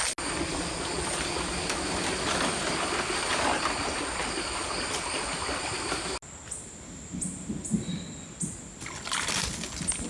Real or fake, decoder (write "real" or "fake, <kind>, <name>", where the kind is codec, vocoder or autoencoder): real